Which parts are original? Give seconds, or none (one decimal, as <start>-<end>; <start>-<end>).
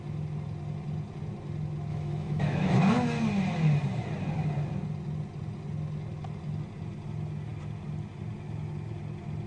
0.0-1.9; 2.8-9.5